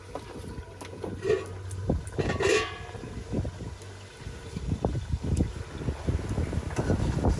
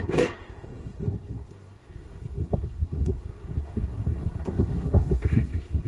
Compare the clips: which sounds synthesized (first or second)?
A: second